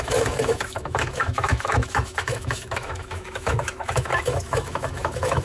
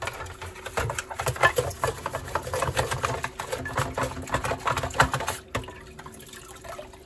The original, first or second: second